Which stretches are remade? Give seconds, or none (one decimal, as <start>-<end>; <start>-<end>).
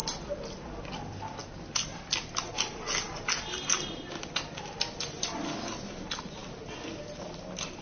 0.0-6.4; 7.2-7.8